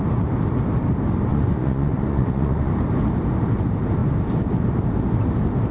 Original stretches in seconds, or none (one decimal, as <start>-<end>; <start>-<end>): 0.0-1.3; 2.7-5.7